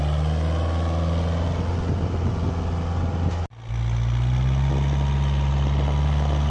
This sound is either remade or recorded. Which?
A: recorded